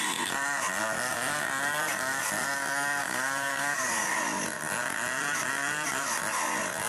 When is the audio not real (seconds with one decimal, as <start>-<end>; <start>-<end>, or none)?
3.0-4.2